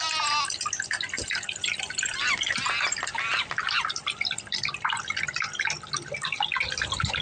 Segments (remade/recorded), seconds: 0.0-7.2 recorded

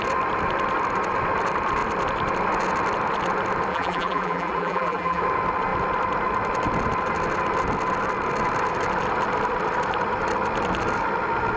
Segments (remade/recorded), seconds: 0.0-3.7 recorded; 3.7-5.2 remade; 5.2-11.6 recorded

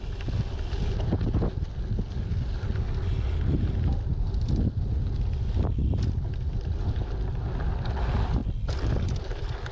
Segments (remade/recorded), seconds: 0.0-9.7 recorded

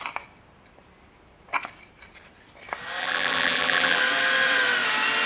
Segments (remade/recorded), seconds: 0.0-3.0 recorded; 3.0-4.0 remade; 4.0-5.3 recorded

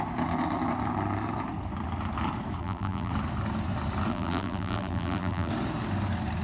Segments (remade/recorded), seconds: 0.0-2.6 recorded; 2.6-3.1 remade; 3.1-4.1 recorded; 4.1-5.5 remade; 5.5-6.4 recorded

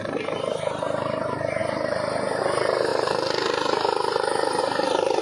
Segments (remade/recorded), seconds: 0.0-5.2 remade

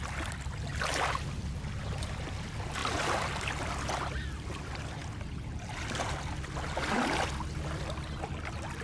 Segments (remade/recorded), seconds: 0.0-8.8 recorded

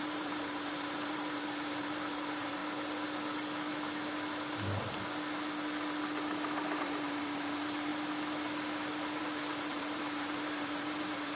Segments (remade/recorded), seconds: 0.0-2.6 remade; 2.6-6.8 recorded; 6.8-7.9 remade; 7.9-9.2 recorded; 9.2-11.4 remade